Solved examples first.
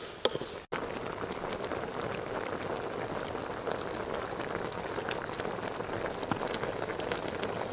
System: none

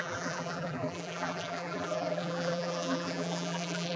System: vocoder, BigVGAN v2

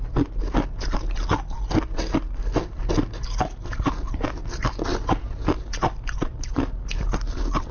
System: none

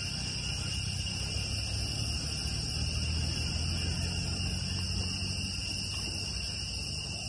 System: none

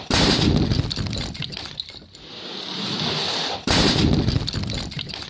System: none